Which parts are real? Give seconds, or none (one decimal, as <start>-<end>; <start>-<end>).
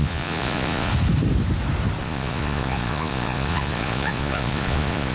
0.9-2.0